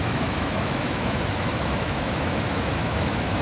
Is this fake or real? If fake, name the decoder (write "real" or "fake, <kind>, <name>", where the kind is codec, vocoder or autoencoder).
fake, autoencoder, DAC-VAE